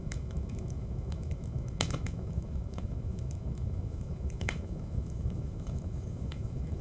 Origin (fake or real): fake